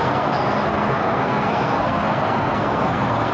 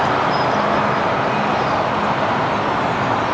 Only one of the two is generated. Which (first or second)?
first